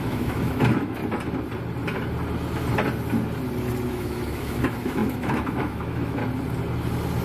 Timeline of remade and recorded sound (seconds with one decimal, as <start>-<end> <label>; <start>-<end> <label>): 0.0-1.0 remade; 1.0-3.9 recorded; 3.9-6.2 remade; 6.2-7.2 recorded